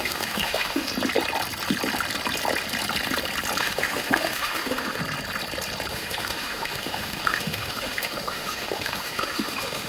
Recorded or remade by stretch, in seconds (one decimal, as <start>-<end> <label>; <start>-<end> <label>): 0.0-0.9 remade; 0.9-3.6 recorded; 3.6-5.0 remade; 5.0-5.9 recorded; 5.9-9.9 remade